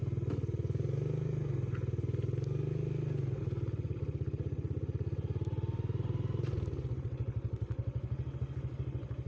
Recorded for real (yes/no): yes